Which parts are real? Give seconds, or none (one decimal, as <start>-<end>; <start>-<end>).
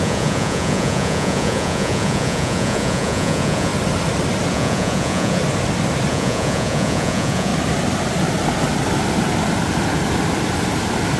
3.7-4.5; 5.4-6.1; 7.5-11.2